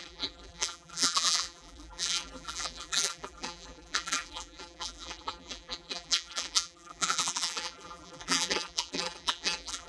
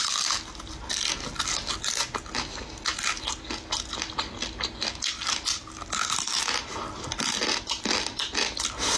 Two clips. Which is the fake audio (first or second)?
first